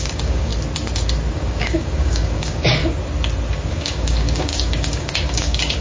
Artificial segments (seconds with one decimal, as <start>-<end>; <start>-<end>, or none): 0.0-0.5; 1.3-2.8; 3.7-5.8